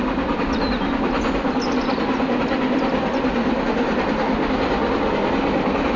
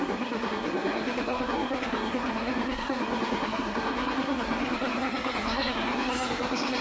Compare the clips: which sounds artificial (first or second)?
second